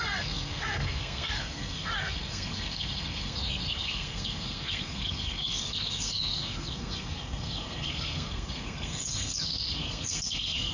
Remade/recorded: remade